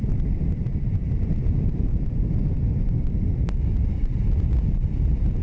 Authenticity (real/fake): real